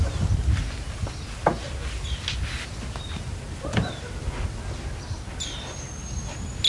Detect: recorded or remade recorded